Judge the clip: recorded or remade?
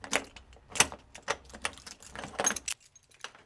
recorded